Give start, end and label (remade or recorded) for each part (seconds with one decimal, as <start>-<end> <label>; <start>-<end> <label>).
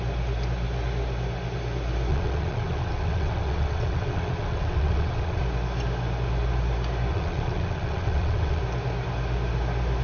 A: 0.0-2.1 recorded; 2.1-5.4 remade; 5.4-7.1 recorded; 7.1-8.6 remade; 8.6-10.0 recorded